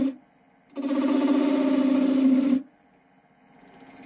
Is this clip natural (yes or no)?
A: yes